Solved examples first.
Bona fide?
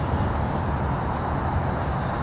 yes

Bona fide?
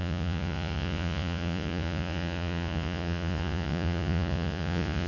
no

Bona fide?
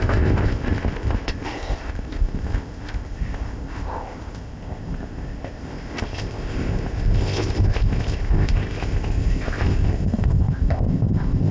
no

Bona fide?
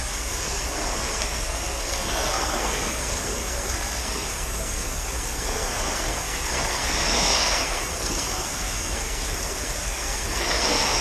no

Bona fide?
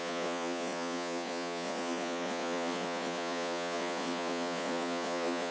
no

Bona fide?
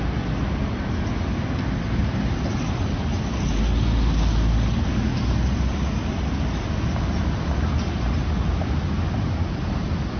yes